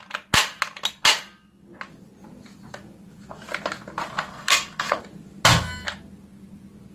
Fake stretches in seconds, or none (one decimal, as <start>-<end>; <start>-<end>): 4.3-5.0